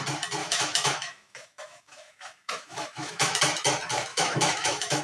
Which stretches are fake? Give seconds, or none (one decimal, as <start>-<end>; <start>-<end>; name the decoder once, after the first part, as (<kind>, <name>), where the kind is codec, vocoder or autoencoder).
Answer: 0.4-3.4 (autoencoder, DAC-VAE); 4.1-5.0